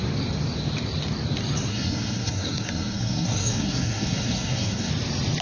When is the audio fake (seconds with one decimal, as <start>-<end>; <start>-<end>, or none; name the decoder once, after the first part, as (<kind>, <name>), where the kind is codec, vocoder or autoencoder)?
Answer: 1.7-4.9 (codec, SNAC)